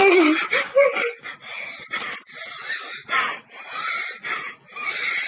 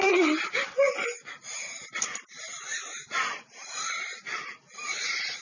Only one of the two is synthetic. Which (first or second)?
second